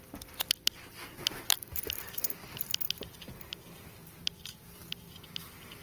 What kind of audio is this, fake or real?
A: fake